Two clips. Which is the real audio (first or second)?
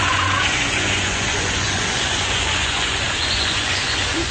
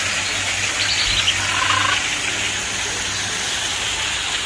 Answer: second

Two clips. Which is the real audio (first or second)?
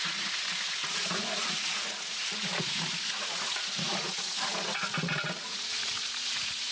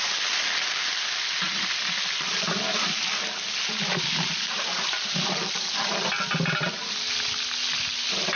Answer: second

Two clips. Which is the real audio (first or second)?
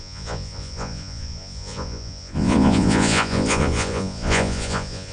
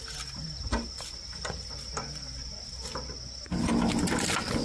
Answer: second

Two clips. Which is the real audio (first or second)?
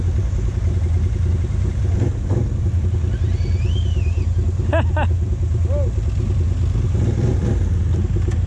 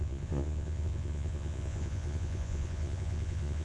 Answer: first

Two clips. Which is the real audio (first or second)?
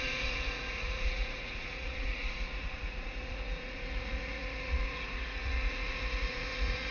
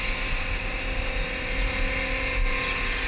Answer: second